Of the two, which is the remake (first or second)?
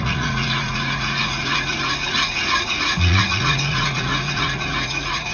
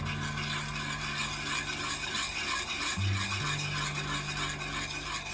first